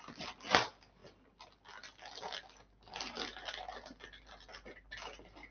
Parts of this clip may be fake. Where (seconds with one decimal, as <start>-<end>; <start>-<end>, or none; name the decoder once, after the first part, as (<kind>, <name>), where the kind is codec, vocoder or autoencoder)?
none